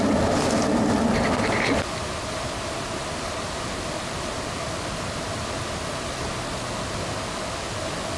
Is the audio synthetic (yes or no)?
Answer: no